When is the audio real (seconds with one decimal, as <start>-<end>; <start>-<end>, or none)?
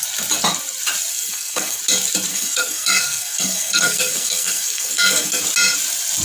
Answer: 0.0-1.1; 1.8-2.3; 5.4-6.2